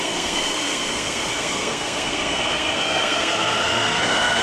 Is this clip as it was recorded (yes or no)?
no